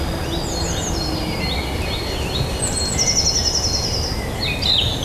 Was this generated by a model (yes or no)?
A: no